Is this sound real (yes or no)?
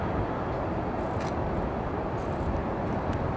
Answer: yes